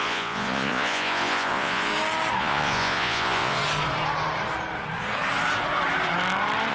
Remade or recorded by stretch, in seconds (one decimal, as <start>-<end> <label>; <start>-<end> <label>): 0.0-1.9 remade; 1.9-2.4 recorded; 2.4-3.6 remade; 3.6-6.7 recorded